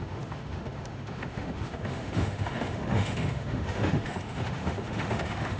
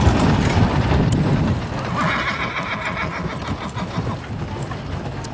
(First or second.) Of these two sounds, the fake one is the first